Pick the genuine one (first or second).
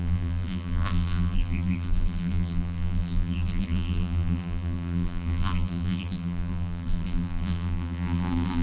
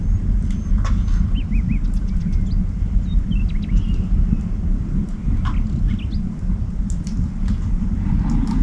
second